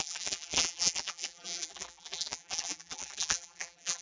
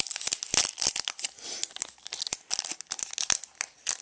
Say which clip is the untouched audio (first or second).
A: second